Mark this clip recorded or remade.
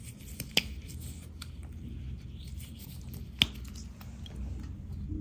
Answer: recorded